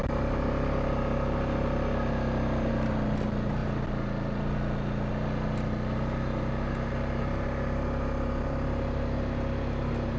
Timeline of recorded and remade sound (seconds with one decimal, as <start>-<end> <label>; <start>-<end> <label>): 0.0-10.2 recorded